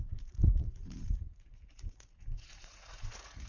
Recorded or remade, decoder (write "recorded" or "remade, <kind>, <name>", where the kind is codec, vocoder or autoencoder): remade, vocoder, Vocos